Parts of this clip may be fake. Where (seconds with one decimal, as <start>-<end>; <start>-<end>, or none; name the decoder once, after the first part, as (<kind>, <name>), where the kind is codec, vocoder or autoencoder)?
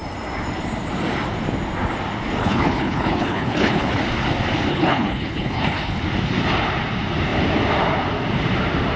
2.4-4.0 (codec, HILCodec); 4.7-6.0